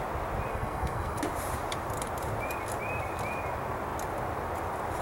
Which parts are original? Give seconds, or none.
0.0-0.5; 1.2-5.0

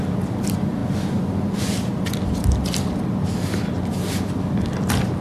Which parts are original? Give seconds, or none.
0.0-5.2

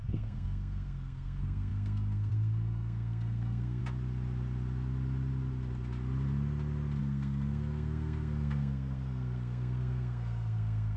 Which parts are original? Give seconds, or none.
3.8-7.0

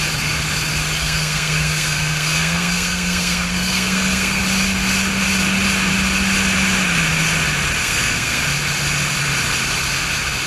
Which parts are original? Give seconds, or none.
0.0-1.0; 4.4-7.8; 8.4-10.5

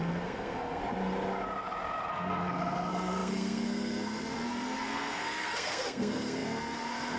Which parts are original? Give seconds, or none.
0.8-2.1

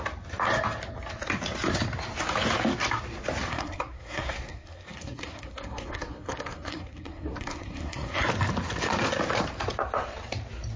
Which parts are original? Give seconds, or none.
0.0-3.5; 8.2-10.8

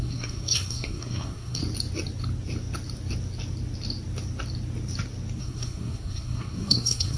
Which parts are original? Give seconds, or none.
1.6-5.4

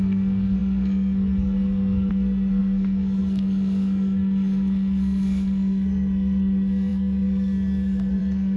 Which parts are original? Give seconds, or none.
none